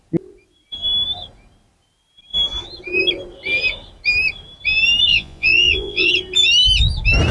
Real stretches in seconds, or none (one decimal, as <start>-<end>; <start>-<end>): 0.0-5.1; 6.1-7.3